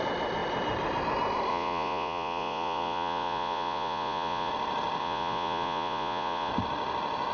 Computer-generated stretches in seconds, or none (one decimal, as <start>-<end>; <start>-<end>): 1.5-4.5; 5.0-6.5